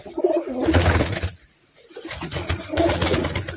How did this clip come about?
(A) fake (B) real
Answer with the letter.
A